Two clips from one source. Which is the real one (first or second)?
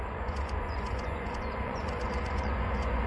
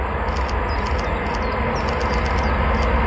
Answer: second